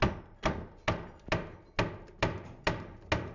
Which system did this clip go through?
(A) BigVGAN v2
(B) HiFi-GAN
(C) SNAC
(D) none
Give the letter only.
D